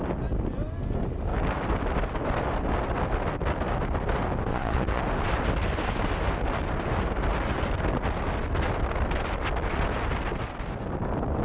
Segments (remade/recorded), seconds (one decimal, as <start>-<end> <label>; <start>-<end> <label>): 0.0-4.5 recorded; 4.5-5.0 remade; 5.0-11.4 recorded